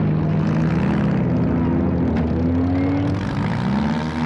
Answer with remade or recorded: recorded